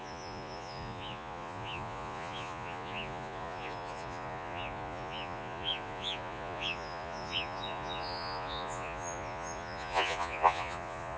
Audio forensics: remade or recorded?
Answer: remade